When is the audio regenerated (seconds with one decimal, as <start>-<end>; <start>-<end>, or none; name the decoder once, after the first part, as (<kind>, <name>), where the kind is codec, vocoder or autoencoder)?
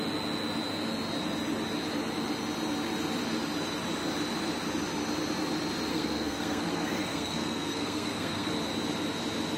5.9-8.5 (codec, SNAC)